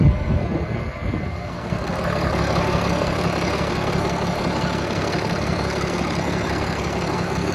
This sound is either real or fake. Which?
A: fake